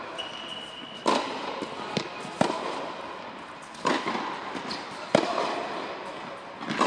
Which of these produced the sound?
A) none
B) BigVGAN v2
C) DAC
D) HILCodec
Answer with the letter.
A